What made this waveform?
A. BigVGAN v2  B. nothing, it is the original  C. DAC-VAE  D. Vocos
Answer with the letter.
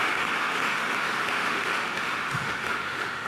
C